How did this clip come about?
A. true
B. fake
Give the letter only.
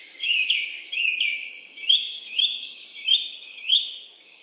B